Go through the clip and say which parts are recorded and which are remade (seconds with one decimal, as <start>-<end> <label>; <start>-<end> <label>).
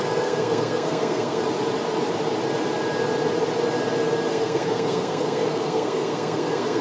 0.0-1.4 remade; 1.4-4.3 recorded; 4.3-6.8 remade